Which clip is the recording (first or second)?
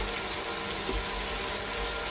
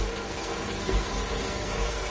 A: first